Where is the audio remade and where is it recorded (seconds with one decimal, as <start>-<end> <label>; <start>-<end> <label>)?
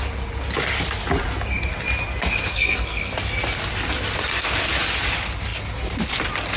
0.0-2.5 recorded; 2.5-3.1 remade; 3.1-6.6 recorded